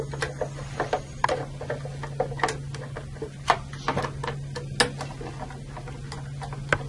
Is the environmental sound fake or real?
real